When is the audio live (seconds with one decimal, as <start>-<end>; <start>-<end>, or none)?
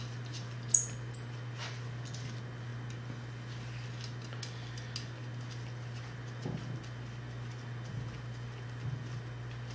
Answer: 0.0-9.7